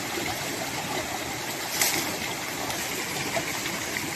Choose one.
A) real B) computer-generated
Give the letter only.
A